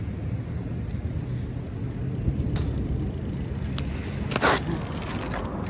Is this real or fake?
real